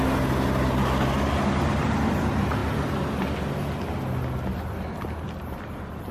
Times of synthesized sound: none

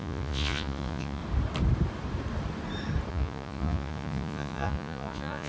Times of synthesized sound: 0.0-1.2; 3.1-5.5

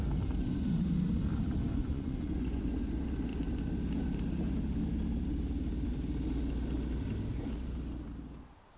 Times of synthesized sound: 1.8-2.7

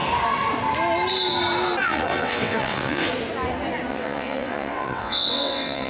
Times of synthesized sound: 1.8-3.1; 3.9-5.9

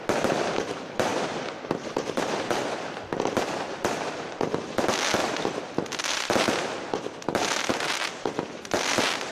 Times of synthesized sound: 1.1-2.6

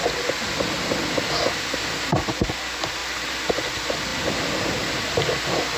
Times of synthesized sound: 3.0-3.5; 4.1-4.9

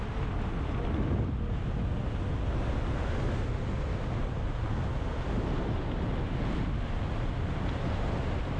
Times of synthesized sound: none

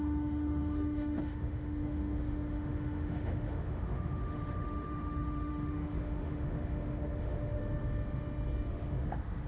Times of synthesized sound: 0.0-7.6; 8.7-9.5